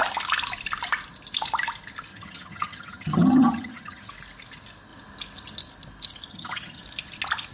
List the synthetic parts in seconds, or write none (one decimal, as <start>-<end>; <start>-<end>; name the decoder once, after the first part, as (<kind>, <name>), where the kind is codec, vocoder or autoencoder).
2.1-4.1 (vocoder, HiFi-GAN); 6.3-6.8